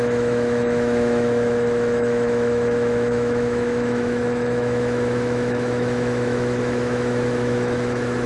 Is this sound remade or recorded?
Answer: remade